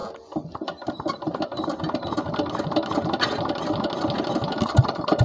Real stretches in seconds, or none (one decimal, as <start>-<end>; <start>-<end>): 0.0-5.2